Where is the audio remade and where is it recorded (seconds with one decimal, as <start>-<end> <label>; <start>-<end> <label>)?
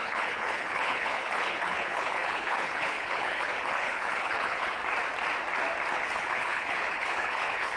0.0-4.8 remade; 4.8-5.9 recorded; 5.9-7.8 remade